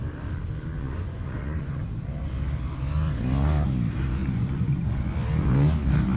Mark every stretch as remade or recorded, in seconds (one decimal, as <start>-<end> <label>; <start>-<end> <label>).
0.0-0.8 recorded; 0.8-1.8 remade; 1.8-4.2 recorded; 4.2-5.0 remade; 5.0-6.2 recorded